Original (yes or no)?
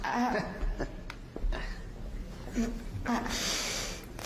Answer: yes